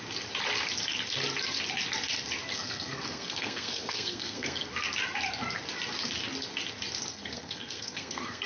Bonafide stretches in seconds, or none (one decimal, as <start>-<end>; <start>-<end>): 0.0-2.5; 4.7-7.1